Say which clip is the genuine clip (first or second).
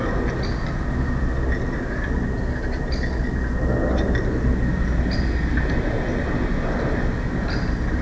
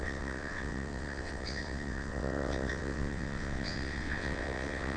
first